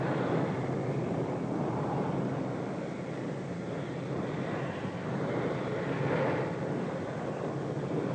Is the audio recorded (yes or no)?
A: yes